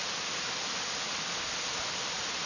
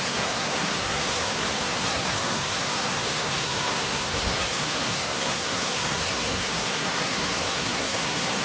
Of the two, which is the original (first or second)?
first